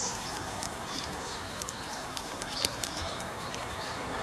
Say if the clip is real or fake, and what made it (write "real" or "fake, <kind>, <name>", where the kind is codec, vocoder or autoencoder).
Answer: fake, codec, SNAC